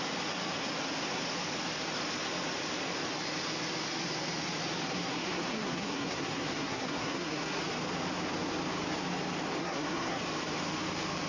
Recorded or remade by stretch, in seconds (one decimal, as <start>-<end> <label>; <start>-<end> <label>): 0.0-4.9 recorded; 4.9-7.6 remade; 7.6-9.6 recorded; 9.6-10.2 remade; 10.2-11.3 recorded